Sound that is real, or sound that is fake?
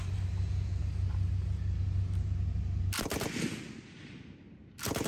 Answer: real